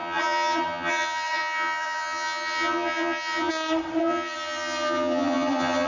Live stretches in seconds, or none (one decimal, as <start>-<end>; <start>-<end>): 3.5-4.0

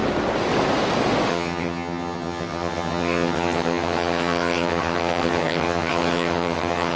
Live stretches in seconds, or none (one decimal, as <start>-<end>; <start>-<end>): 0.0-1.3

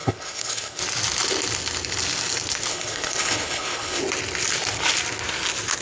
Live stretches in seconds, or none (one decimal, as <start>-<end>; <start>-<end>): 0.8-2.7; 4.0-5.8

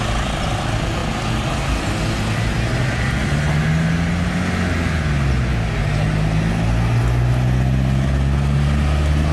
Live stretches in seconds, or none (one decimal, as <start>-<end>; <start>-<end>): 0.0-9.3

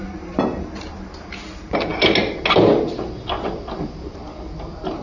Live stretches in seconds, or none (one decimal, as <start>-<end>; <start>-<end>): 0.0-5.0

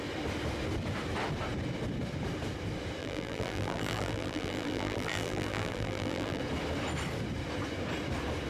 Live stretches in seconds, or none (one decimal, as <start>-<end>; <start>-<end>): 0.0-3.0; 6.4-8.5

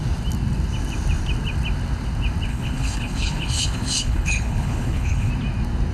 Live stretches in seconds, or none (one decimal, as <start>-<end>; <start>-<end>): 0.0-2.5; 5.3-5.9